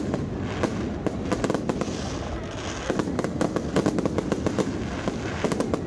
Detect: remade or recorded recorded